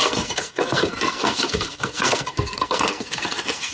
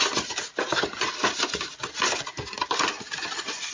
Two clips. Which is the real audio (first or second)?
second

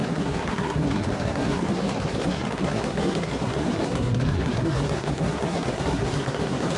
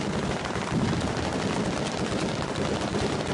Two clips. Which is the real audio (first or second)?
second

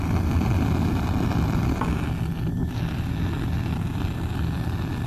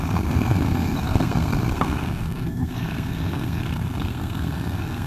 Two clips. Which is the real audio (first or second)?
first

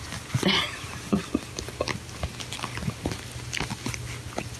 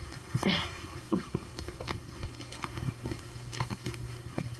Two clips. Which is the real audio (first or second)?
first